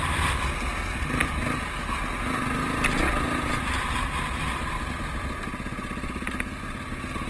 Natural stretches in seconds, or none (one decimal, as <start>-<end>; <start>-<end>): 0.0-7.3